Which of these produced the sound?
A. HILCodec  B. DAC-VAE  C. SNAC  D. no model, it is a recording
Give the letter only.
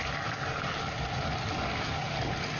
D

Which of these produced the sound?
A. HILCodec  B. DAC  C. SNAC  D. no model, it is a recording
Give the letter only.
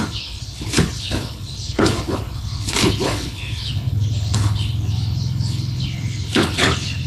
A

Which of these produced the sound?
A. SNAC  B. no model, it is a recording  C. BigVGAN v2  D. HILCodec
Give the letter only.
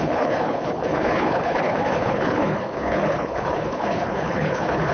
D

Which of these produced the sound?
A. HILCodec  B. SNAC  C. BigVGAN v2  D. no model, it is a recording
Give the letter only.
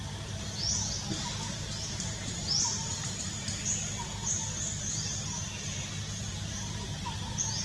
D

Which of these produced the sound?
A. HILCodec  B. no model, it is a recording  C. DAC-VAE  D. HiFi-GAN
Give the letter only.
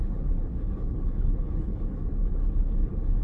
A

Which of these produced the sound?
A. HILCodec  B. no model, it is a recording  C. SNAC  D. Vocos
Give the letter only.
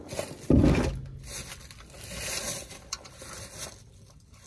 B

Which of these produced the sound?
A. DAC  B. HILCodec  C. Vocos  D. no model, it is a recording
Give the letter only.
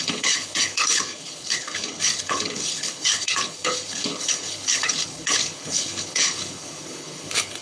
B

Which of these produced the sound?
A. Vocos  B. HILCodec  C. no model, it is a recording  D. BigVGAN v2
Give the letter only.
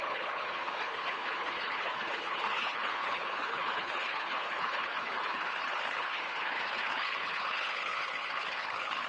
B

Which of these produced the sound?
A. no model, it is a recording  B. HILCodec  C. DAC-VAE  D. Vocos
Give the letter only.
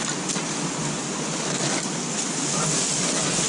A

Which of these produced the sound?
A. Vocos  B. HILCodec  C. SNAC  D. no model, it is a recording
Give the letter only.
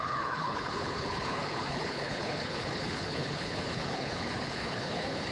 B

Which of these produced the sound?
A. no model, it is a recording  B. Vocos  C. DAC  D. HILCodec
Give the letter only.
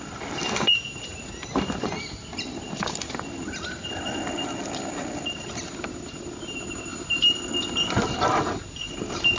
A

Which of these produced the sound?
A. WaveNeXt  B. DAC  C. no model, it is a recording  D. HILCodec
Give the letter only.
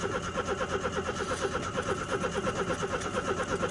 C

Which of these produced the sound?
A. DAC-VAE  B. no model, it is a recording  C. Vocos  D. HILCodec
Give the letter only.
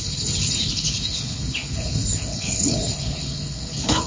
D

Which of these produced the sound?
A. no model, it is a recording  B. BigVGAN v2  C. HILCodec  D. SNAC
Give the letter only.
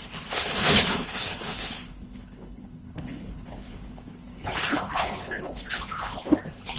C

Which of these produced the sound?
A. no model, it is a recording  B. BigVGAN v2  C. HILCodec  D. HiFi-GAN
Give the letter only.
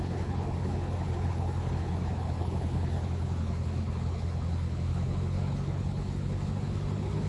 C